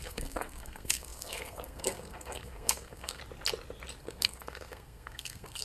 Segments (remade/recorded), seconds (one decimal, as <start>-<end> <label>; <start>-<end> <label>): 0.0-3.2 remade; 3.2-4.0 recorded; 4.0-5.6 remade